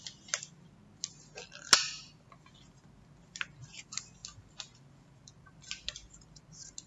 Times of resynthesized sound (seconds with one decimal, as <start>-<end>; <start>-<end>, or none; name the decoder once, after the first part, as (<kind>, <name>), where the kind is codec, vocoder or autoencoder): none